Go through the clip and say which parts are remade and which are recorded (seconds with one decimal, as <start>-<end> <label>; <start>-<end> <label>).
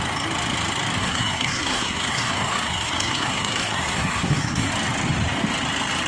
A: 0.0-1.0 recorded; 1.0-4.7 remade; 4.7-6.1 recorded